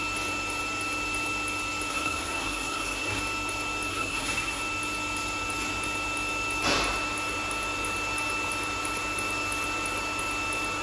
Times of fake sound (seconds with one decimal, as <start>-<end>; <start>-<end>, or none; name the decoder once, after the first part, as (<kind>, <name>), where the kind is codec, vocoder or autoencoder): 1.9-3.2 (codec, SNAC); 3.9-4.6